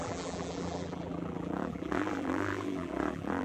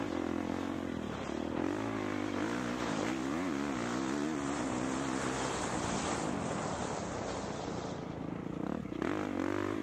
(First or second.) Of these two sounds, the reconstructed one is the first